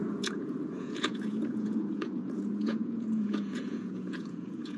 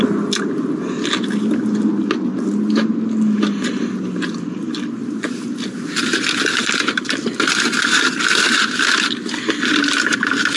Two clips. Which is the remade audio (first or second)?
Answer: first